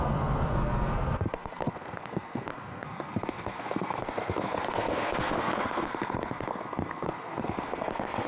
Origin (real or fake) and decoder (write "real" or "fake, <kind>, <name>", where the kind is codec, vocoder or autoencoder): fake, codec, SNAC